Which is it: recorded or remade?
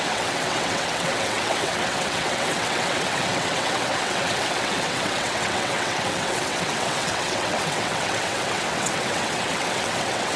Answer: remade